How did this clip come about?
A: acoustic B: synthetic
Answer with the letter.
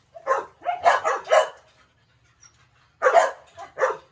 A